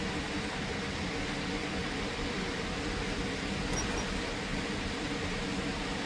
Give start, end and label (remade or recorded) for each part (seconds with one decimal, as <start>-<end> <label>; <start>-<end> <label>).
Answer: 0.0-1.8 recorded; 1.8-2.4 remade; 2.4-4.5 recorded; 4.5-5.4 remade; 5.4-6.1 recorded